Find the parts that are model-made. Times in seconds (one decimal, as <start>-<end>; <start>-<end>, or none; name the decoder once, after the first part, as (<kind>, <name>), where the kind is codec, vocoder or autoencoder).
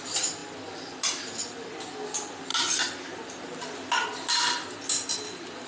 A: none